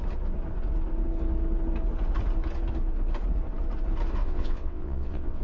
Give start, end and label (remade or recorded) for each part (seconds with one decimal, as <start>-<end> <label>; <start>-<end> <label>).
0.0-4.2 recorded; 4.2-5.4 remade